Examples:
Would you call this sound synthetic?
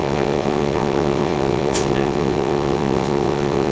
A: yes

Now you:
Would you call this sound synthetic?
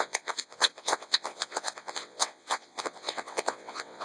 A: yes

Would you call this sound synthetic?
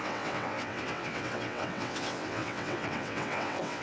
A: yes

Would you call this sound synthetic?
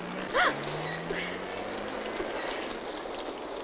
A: no